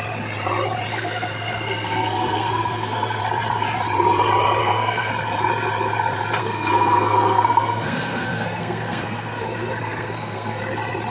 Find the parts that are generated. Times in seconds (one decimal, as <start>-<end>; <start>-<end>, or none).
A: 0.9-3.2; 4.6-5.1; 6.4-10.6